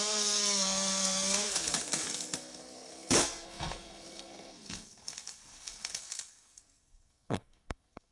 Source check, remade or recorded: remade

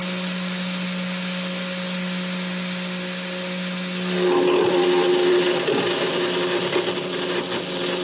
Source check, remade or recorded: recorded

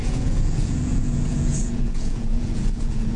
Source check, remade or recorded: remade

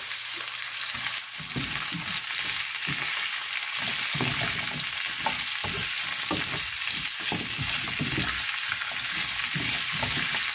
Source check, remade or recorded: recorded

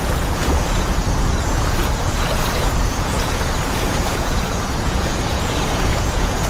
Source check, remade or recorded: remade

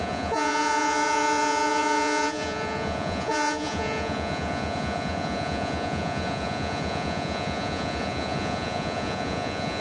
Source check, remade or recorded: remade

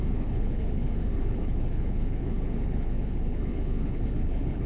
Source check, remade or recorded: remade